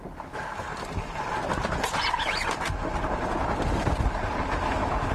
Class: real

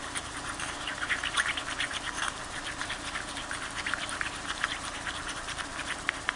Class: fake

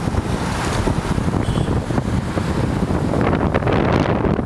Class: real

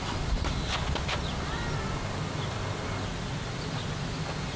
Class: real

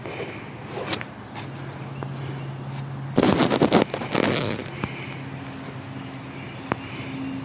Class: real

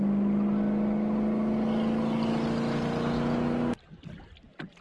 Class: real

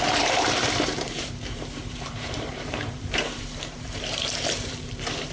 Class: fake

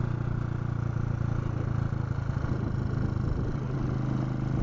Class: real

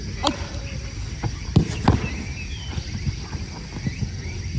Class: real